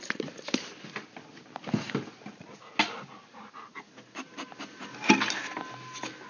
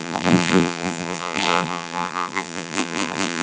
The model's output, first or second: second